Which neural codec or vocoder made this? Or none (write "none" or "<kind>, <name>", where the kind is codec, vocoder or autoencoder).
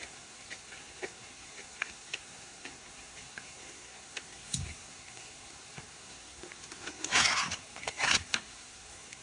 codec, SNAC